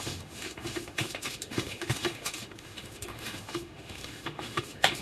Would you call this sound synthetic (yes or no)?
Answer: yes